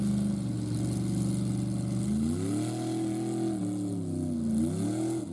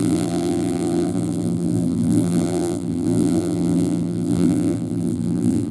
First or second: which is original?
first